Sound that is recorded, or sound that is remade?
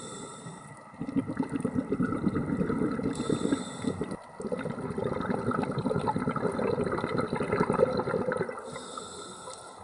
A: recorded